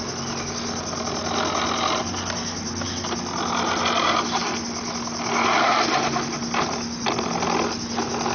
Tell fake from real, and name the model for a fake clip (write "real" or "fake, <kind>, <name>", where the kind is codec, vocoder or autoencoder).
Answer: real